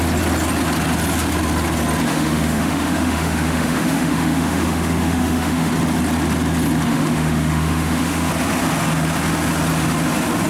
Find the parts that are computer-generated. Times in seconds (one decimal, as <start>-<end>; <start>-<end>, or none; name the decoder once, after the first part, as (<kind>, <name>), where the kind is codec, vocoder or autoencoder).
2.1-5.7 (autoencoder, DAC-VAE); 6.9-8.3